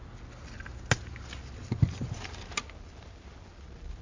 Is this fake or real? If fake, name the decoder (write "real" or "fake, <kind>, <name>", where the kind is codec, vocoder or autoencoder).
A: real